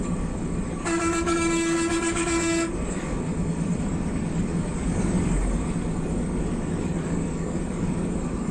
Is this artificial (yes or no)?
yes